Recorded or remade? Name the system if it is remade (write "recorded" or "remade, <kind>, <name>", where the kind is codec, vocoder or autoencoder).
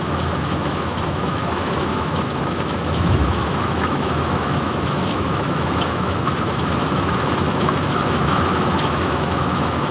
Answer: remade, autoencoder, DAC-VAE